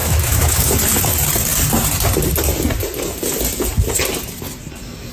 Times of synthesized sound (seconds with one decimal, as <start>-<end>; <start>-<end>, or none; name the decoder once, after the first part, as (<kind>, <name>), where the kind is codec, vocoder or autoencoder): 0.0-0.7 (autoencoder, DAC-VAE)